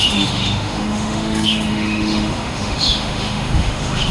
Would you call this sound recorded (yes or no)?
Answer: no